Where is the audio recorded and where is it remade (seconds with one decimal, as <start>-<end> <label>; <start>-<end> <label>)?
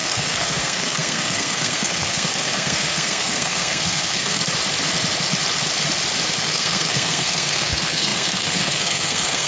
0.0-4.4 remade; 4.4-6.4 recorded; 6.4-9.5 remade